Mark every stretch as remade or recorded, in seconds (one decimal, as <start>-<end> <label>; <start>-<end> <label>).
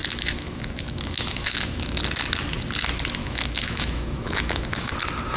0.0-2.0 remade; 2.0-3.2 recorded; 3.2-4.9 remade; 4.9-5.4 recorded